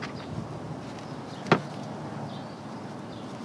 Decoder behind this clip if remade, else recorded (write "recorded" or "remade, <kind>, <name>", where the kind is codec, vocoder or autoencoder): recorded